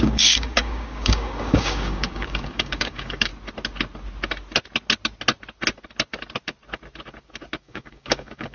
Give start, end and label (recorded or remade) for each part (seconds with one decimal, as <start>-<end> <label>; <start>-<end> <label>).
0.0-3.3 remade; 3.3-7.6 recorded; 7.6-8.5 remade